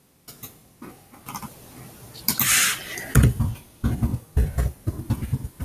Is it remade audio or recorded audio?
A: recorded